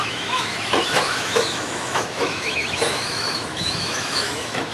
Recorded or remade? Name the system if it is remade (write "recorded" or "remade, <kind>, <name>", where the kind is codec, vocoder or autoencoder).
remade, autoencoder, DAC-VAE